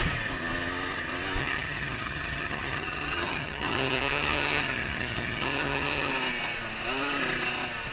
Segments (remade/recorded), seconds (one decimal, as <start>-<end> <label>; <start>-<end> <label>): 0.0-1.4 recorded; 1.4-6.1 remade; 6.1-7.9 recorded